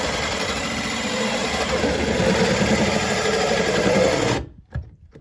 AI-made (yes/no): no